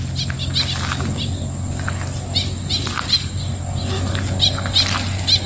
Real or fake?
real